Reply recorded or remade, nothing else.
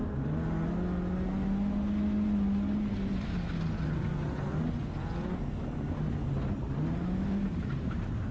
recorded